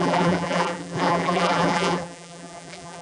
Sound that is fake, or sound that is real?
fake